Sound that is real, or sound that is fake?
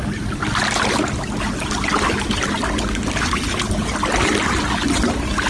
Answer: real